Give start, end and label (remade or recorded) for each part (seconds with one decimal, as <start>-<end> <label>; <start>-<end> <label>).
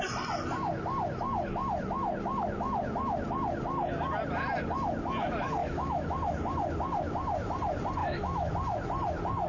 0.0-5.6 recorded; 5.6-6.1 remade; 6.1-8.0 recorded; 8.0-8.5 remade; 8.5-9.5 recorded